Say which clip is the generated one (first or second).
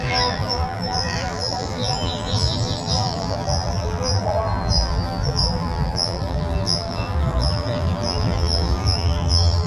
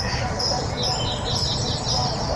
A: first